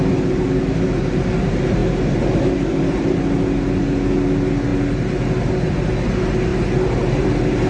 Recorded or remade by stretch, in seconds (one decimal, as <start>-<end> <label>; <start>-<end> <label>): 0.0-7.7 recorded